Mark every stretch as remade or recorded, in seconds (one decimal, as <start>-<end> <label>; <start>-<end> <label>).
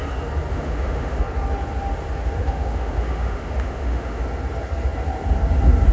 0.0-0.5 recorded; 0.5-1.2 remade; 1.2-2.4 recorded; 2.4-4.2 remade; 4.2-5.9 recorded